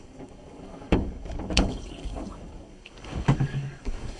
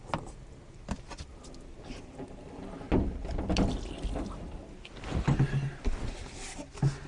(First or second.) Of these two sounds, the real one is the second